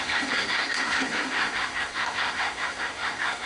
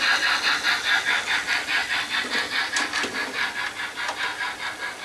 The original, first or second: second